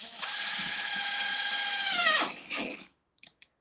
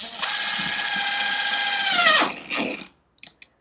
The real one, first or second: second